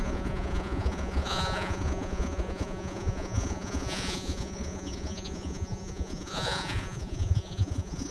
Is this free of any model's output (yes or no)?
no